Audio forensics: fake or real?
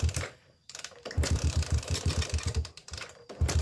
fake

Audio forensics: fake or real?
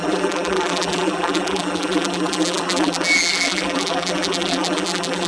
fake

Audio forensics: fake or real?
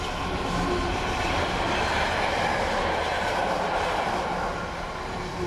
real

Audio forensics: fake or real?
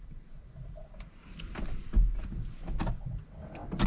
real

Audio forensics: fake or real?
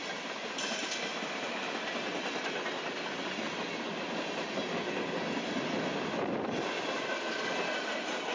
real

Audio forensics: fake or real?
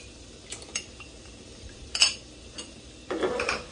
fake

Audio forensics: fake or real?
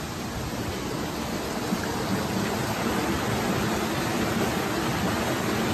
real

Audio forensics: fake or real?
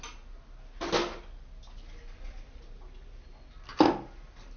real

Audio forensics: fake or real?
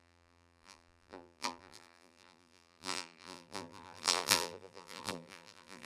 fake